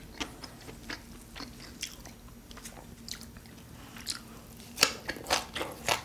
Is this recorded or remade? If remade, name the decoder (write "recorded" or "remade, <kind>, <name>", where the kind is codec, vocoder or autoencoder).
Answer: recorded